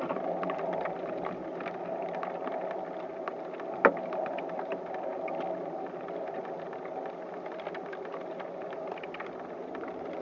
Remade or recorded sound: recorded